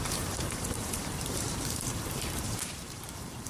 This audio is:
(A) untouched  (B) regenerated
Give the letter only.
B